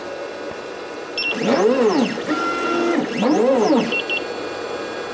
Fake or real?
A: real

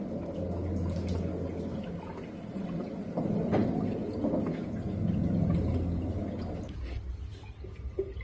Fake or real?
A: real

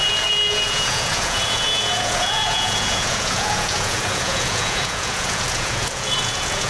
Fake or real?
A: fake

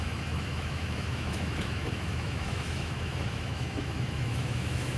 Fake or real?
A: fake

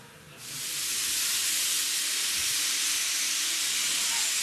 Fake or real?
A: real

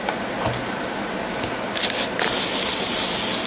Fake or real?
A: real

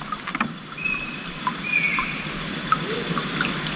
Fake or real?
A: real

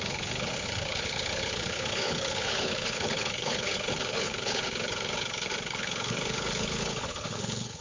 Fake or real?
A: fake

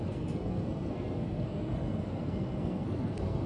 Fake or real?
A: fake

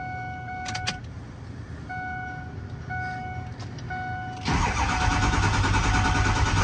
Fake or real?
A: real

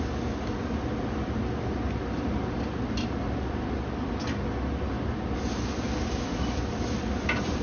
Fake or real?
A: real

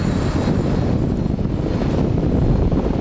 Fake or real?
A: real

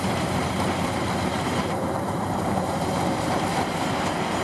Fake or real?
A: fake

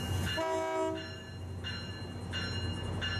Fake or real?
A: real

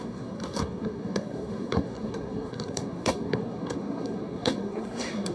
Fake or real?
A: fake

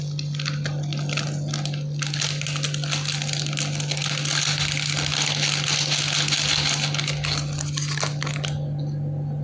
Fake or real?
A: real